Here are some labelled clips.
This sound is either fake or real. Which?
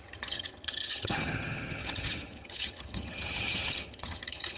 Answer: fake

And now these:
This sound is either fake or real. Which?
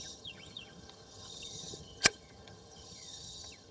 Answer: fake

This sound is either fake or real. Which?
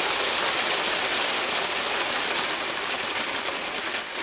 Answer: real